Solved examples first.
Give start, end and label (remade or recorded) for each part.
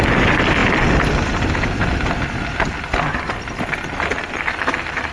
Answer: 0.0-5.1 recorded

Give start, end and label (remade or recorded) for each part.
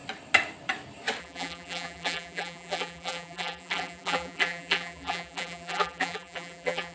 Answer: 0.0-1.2 recorded; 1.2-6.9 remade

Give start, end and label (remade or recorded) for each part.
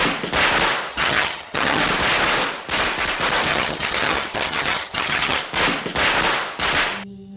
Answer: 0.0-0.9 recorded; 0.9-1.8 remade; 1.8-3.5 recorded; 3.5-5.4 remade; 5.4-7.4 recorded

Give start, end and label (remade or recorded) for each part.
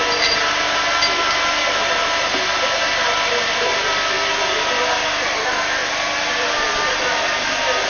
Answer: 0.0-5.8 recorded; 5.8-6.8 remade; 6.8-7.9 recorded